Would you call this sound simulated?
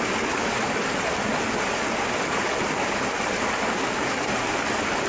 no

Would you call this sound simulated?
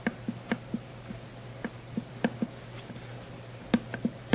no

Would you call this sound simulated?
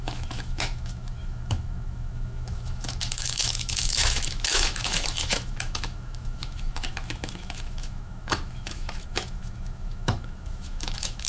yes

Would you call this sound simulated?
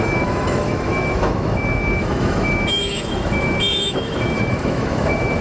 yes